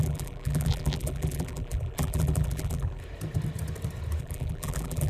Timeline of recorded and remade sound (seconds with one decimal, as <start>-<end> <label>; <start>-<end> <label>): 0.0-3.0 remade; 3.0-4.2 recorded; 4.2-5.1 remade